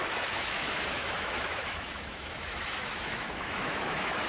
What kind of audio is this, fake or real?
fake